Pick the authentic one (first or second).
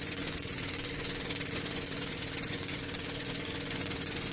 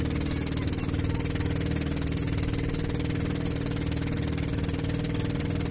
second